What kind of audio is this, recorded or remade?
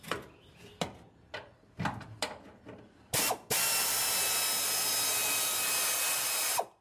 recorded